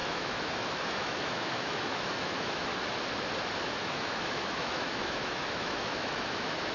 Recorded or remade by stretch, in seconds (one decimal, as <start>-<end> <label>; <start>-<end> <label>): 0.0-2.7 remade; 2.7-3.8 recorded; 3.8-6.7 remade